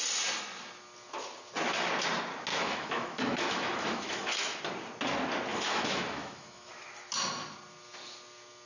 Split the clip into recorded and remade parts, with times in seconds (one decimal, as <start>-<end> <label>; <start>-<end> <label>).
0.0-2.5 recorded; 2.5-4.6 remade; 4.6-5.5 recorded; 5.5-6.7 remade; 6.7-8.7 recorded